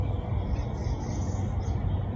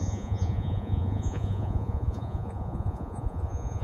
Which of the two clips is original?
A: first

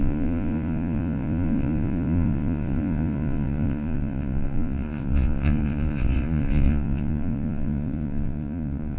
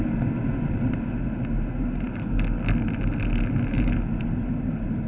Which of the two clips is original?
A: second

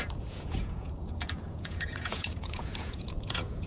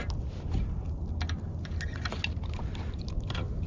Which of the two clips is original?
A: second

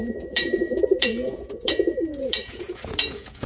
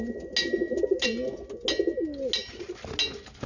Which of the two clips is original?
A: second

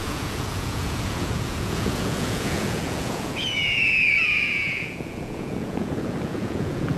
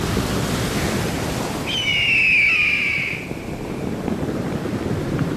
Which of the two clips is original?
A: second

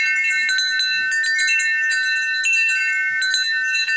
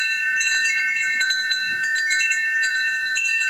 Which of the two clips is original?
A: first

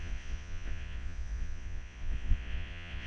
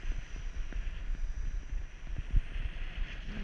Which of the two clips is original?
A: second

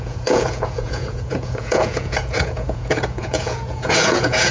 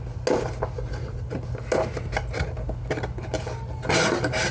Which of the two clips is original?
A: second